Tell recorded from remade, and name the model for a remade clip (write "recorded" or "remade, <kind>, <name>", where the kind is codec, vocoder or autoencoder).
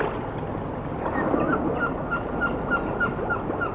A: recorded